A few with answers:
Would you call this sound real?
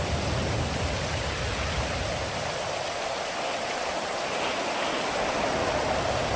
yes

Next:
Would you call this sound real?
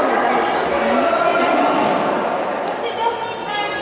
yes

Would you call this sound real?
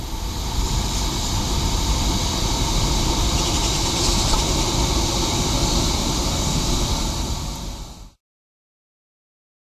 yes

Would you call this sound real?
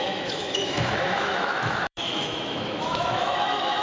no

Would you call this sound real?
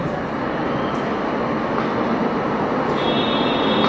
yes